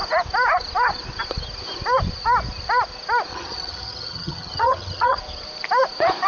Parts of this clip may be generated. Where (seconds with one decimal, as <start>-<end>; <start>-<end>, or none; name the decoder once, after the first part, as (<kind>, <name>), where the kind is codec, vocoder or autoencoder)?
3.3-5.2 (vocoder, HiFi-GAN)